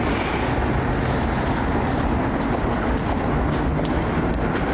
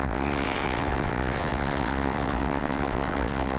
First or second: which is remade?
second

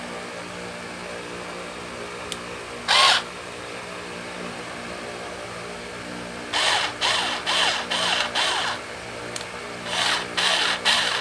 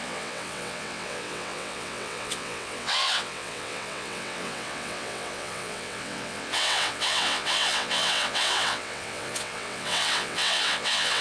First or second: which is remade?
second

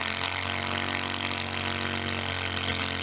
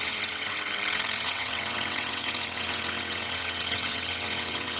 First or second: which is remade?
second